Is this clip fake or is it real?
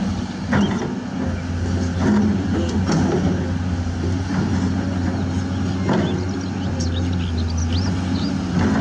real